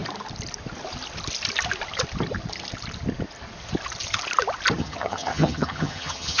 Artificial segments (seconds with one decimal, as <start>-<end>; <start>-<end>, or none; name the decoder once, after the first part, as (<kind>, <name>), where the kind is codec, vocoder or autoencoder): 4.8-6.4 (vocoder, HiFi-GAN)

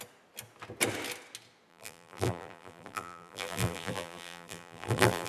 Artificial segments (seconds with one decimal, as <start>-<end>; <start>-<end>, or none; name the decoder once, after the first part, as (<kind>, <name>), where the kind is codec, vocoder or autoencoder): 1.7-5.3 (vocoder, BigVGAN v2)